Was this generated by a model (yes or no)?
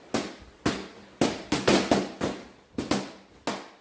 no